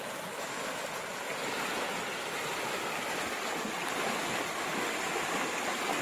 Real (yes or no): yes